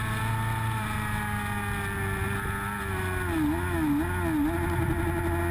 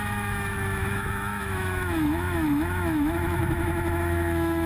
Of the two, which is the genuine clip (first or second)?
first